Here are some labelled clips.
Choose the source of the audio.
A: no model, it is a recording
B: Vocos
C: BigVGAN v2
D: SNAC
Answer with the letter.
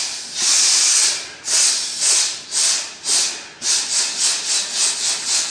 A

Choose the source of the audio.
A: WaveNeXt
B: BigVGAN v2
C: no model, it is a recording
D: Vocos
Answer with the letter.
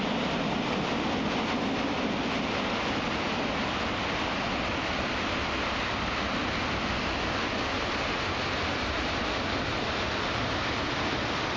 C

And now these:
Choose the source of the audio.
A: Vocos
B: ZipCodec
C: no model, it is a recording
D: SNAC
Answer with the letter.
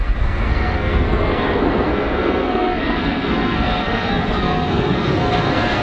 D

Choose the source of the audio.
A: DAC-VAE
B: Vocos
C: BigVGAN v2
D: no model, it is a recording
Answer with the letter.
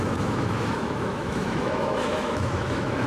A